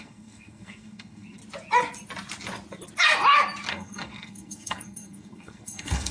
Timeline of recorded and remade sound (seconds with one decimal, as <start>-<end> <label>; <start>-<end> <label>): 0.0-1.4 remade; 1.4-3.7 recorded; 3.7-6.1 remade